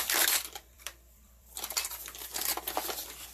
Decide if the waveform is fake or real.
fake